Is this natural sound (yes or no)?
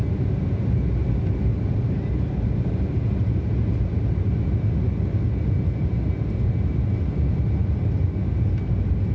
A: yes